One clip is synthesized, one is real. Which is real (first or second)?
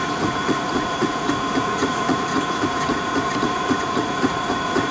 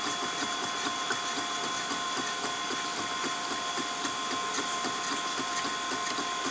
second